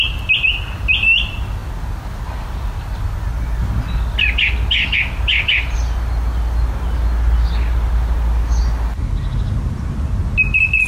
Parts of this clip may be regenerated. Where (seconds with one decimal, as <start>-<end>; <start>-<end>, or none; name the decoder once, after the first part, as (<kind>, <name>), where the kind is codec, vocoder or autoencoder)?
none

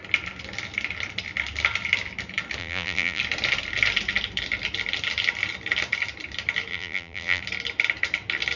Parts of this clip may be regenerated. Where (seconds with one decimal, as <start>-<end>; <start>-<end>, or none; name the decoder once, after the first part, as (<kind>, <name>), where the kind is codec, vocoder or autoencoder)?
2.6-3.2 (vocoder, BigVGAN v2); 6.7-7.4

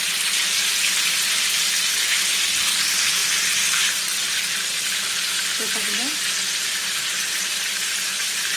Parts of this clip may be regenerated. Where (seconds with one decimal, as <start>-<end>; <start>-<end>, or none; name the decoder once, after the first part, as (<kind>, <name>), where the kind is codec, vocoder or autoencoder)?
0.0-8.6 (vocoder, BigVGAN v2)

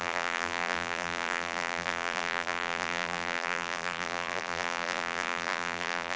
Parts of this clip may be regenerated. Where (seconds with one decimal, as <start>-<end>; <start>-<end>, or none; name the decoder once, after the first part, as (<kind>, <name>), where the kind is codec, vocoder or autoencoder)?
0.0-6.2 (vocoder, BigVGAN v2)

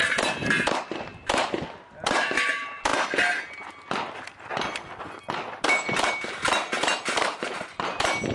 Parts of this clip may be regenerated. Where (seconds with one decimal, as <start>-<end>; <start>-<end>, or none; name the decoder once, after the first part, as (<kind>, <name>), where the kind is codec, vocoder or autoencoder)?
none

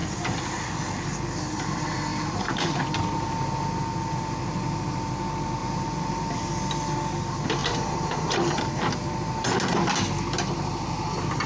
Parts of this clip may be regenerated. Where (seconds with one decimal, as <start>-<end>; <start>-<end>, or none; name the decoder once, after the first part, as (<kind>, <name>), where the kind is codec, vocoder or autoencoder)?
0.0-0.7 (vocoder, BigVGAN v2); 2.1-2.8; 5.6-6.5; 7.6-8.9